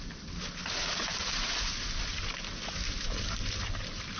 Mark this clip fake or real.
real